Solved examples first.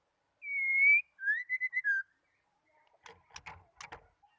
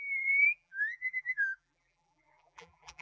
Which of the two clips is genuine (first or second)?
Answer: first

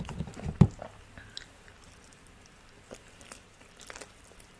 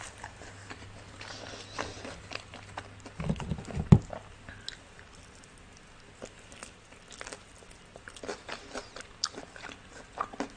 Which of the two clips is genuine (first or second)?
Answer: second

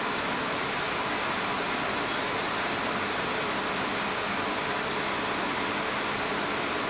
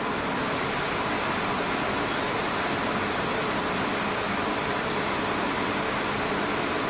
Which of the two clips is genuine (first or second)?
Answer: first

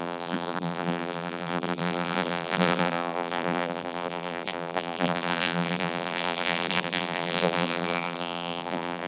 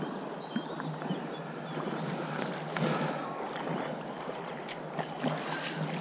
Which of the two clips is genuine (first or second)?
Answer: second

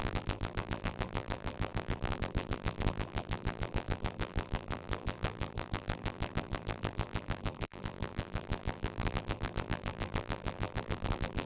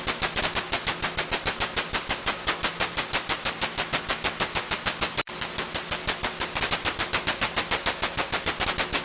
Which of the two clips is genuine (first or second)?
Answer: second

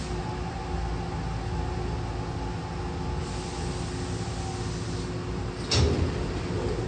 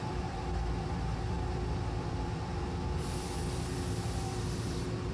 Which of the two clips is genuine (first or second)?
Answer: first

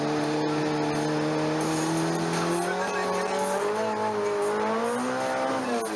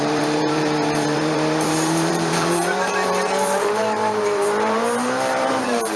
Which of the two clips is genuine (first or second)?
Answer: first